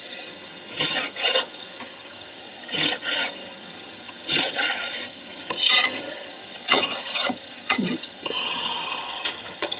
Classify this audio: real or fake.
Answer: fake